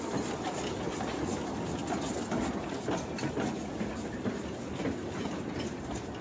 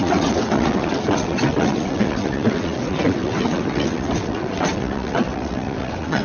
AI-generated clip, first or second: second